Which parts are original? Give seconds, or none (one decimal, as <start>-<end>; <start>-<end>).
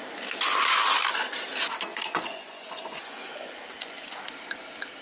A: 0.0-1.9; 4.2-5.0